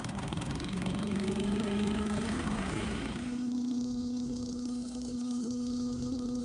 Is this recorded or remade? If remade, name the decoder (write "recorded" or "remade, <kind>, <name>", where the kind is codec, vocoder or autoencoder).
remade, codec, SNAC